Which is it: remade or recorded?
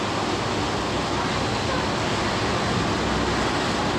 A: recorded